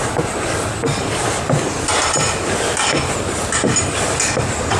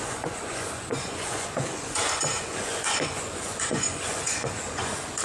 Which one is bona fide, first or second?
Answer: first